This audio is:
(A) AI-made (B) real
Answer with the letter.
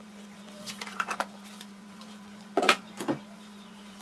A